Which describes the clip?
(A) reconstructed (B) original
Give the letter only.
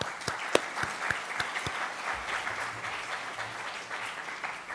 B